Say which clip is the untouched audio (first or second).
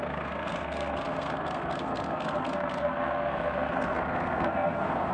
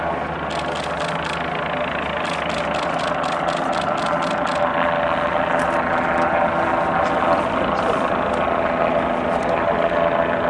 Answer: second